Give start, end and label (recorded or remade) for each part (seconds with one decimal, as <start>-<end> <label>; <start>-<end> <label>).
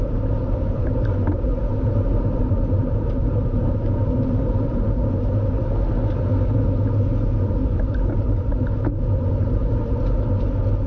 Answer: 0.0-4.8 remade; 4.8-7.6 recorded; 7.6-10.0 remade; 10.0-10.9 recorded